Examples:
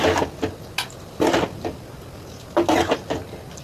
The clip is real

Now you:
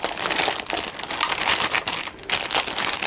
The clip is real